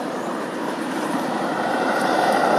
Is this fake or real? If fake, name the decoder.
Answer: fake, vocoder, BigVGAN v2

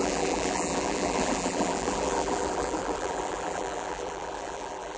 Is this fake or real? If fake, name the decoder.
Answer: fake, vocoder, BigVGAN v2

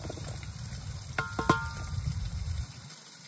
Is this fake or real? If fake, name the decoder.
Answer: real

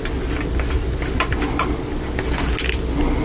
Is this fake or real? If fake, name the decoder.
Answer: real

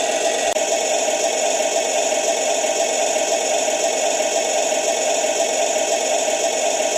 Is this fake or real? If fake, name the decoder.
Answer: real